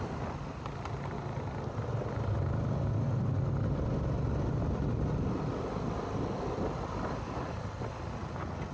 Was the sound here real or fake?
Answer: real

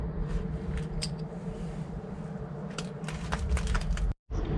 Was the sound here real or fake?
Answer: fake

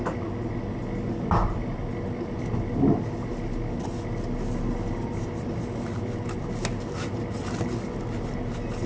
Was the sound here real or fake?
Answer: real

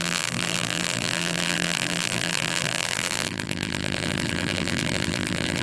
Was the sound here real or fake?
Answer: fake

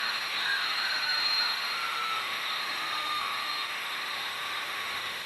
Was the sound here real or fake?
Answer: fake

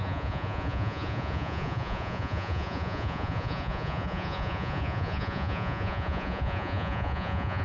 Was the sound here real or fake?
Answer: fake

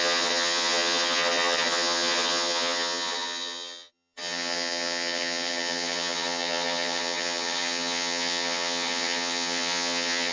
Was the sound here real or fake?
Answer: fake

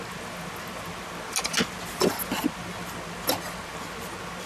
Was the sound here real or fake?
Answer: real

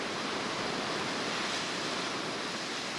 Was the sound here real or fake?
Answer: real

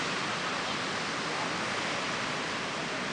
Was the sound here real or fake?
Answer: real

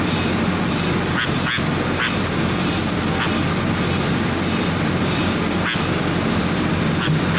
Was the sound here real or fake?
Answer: real